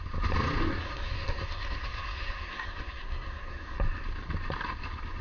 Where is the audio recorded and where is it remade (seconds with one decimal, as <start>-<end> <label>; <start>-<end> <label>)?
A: 0.0-0.7 recorded; 0.7-3.8 remade; 3.8-5.2 recorded